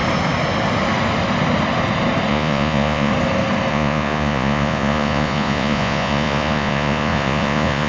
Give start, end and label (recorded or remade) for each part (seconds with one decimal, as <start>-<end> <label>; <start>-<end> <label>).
0.0-2.3 recorded; 2.3-3.1 remade; 3.1-3.7 recorded; 3.7-7.9 remade